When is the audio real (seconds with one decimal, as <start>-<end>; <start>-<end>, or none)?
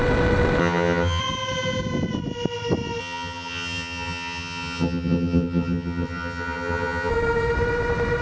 0.0-0.6; 1.2-3.0; 7.1-8.2